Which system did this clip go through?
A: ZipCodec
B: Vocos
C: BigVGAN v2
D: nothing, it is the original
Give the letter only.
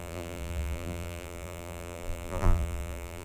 C